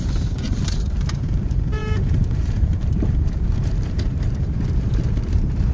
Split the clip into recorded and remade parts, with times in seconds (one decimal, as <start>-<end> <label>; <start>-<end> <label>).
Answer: 0.0-5.7 remade